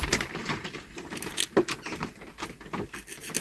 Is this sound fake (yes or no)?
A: no